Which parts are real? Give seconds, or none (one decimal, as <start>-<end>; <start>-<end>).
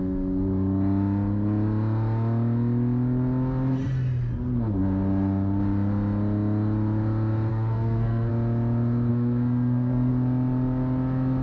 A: 0.0-7.5; 8.3-9.1; 10.1-11.4